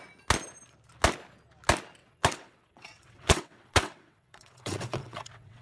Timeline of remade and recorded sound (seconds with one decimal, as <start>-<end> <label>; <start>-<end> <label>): 0.0-2.0 recorded; 2.0-5.6 remade